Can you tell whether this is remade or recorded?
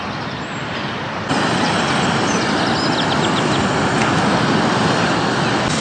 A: recorded